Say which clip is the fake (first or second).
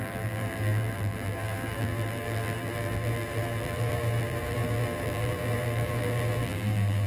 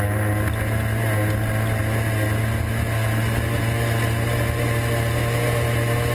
first